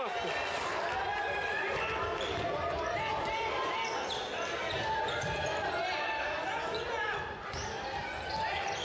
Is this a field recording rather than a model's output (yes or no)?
yes